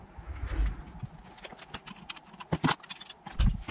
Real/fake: real